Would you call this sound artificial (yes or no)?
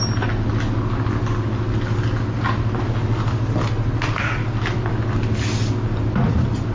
no